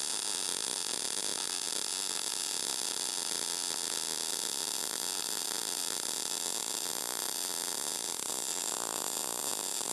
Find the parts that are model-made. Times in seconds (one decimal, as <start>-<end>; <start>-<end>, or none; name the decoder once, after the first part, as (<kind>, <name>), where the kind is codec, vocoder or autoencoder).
none